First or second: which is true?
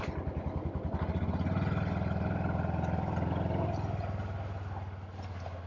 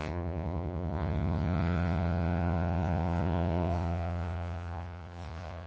first